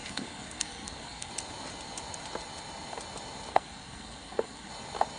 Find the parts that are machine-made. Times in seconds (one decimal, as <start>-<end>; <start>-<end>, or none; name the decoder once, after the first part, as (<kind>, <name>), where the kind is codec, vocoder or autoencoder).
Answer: 0.0-1.3 (codec, SNAC); 3.5-4.7